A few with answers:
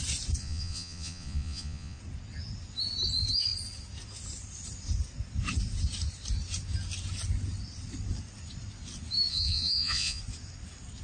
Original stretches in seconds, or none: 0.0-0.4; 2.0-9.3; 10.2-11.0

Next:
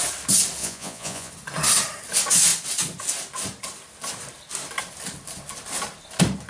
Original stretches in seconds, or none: 0.0-0.6; 1.3-6.5

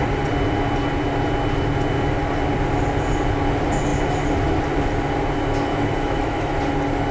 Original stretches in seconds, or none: 0.0-5.7; 6.6-7.1

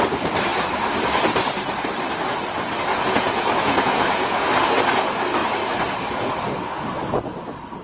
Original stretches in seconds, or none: 0.0-2.9; 4.4-7.8

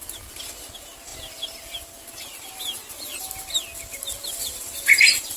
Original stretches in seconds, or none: 0.0-5.4